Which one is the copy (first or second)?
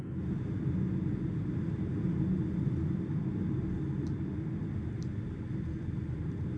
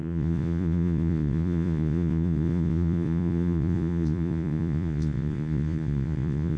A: second